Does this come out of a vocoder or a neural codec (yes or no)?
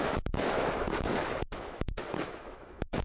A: yes